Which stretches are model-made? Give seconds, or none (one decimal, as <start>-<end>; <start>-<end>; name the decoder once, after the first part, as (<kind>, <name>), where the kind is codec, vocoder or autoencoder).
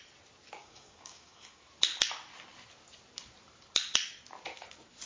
0.6-1.6 (codec, DAC)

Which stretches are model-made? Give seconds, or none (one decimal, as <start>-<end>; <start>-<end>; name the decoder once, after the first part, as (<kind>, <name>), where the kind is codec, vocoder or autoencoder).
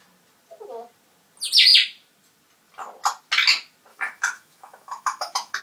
3.9-5.6 (autoencoder, DAC-VAE)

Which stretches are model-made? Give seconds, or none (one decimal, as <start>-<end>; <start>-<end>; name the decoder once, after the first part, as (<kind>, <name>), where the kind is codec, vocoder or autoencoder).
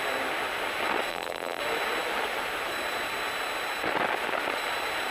1.1-1.6 (vocoder, BigVGAN v2)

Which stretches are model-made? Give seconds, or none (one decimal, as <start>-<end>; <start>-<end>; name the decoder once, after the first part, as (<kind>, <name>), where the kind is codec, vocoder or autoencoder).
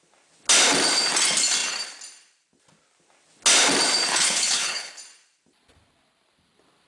4.1-5.0 (codec, HILCodec)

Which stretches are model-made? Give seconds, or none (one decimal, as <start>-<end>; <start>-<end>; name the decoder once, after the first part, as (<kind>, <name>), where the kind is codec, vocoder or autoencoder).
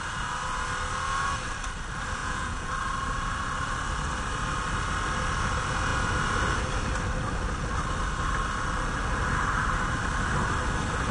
2.2-2.7 (vocoder, Vocos)